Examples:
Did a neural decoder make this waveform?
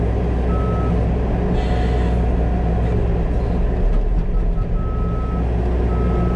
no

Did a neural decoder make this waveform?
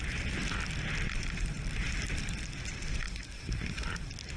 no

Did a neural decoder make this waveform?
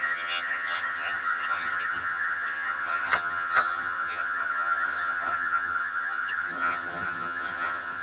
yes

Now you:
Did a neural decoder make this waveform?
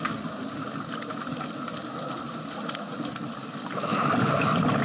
no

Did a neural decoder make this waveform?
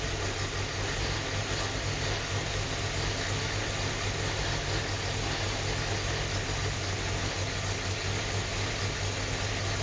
no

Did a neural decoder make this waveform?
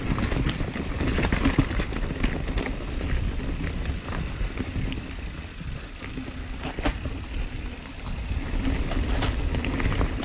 no